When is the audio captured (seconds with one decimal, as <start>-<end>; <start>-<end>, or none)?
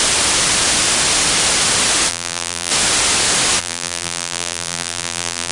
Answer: 0.0-2.1; 2.7-3.6